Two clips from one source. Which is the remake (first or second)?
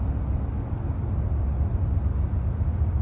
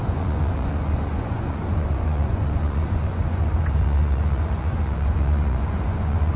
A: second